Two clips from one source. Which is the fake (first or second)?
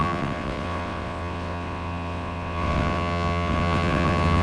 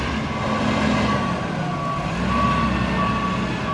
first